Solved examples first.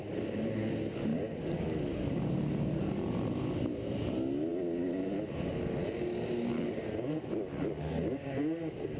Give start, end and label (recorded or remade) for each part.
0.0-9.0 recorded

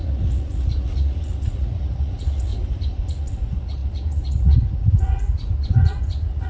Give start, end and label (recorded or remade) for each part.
0.0-2.5 remade; 2.5-3.1 recorded; 3.1-6.5 remade

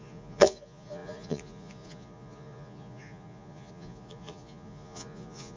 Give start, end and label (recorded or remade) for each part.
0.0-5.6 remade